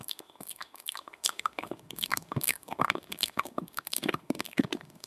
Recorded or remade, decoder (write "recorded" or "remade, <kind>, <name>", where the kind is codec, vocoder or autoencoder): remade, autoencoder, DAC-VAE